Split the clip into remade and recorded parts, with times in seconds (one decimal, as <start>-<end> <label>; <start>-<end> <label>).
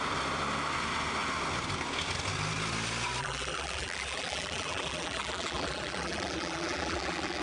0.0-3.2 recorded; 3.2-7.4 remade